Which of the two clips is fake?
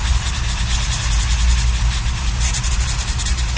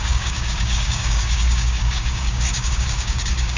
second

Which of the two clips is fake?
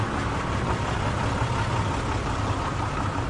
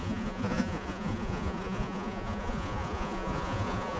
second